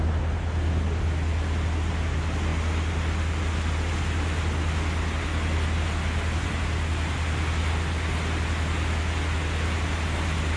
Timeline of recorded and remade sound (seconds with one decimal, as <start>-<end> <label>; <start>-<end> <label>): 0.0-10.6 recorded